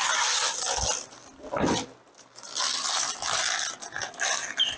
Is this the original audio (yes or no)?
yes